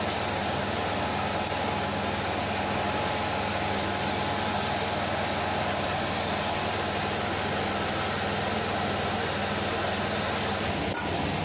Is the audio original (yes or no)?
yes